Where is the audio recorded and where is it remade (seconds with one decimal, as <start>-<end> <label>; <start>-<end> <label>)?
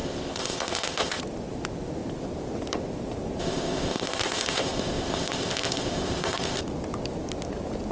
0.0-1.2 remade; 1.2-3.4 recorded; 3.4-6.6 remade; 6.6-7.9 recorded